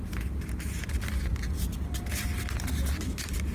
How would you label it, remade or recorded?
recorded